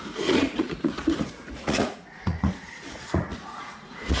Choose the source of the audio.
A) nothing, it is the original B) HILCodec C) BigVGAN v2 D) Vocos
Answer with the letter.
D